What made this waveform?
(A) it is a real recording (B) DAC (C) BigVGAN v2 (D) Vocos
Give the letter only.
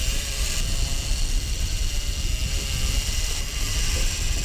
C